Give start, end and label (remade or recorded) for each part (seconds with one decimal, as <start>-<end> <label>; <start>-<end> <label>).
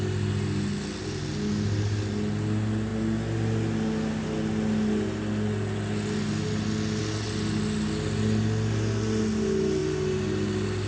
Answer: 0.0-10.9 recorded